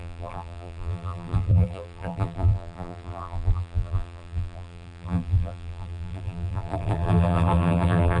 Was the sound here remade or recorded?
remade